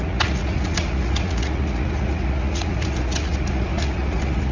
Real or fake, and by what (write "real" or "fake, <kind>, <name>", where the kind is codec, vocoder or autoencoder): fake, vocoder, Vocos